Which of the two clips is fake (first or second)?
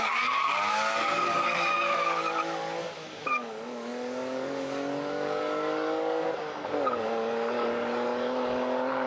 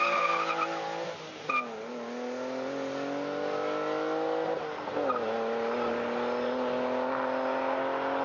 first